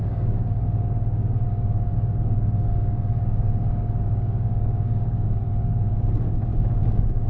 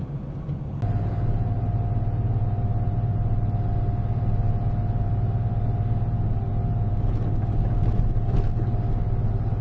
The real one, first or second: second